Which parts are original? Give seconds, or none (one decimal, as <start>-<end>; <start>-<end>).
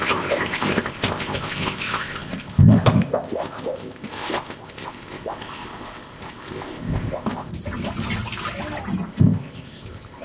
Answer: 7.5-9.1